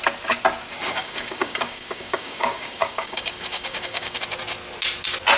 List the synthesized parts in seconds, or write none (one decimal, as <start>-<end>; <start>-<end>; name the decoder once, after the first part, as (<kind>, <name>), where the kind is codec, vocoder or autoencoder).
1.0-4.2 (codec, DAC)